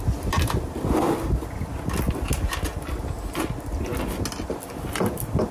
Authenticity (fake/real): real